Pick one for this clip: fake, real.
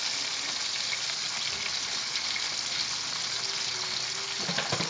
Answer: real